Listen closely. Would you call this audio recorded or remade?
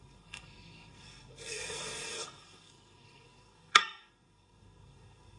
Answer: remade